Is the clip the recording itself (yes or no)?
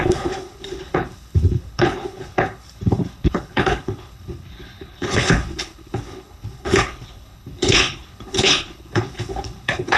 no